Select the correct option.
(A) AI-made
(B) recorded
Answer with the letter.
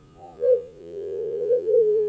A